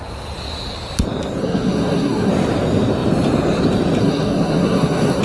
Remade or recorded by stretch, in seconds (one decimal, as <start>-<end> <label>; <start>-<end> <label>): 0.0-1.4 recorded; 1.4-2.3 remade; 2.3-4.0 recorded; 4.0-5.2 remade